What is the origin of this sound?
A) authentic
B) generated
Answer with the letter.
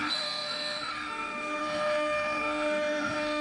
B